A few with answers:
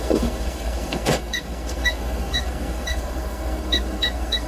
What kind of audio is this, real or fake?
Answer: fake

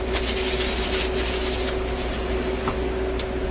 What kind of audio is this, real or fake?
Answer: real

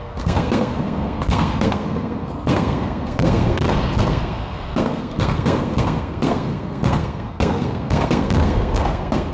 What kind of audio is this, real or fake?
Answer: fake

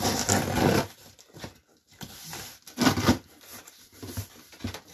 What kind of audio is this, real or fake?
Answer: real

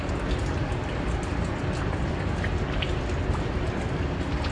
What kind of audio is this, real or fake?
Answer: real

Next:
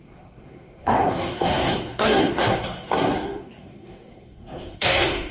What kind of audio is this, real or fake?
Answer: fake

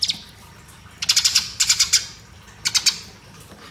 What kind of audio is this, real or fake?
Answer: real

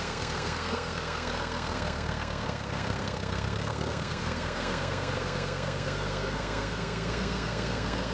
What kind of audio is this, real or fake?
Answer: fake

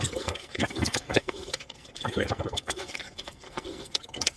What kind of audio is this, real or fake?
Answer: fake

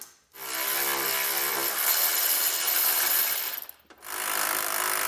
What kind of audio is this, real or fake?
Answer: real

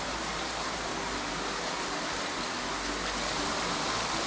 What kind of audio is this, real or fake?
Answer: real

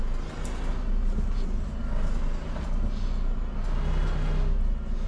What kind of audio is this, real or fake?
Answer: real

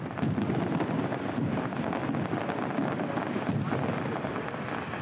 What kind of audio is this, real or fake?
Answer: real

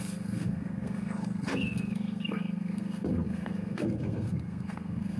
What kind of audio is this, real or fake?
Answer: fake